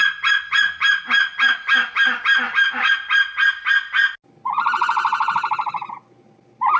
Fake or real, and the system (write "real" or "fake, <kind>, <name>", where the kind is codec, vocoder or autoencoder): real